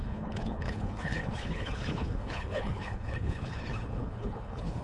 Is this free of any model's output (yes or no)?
no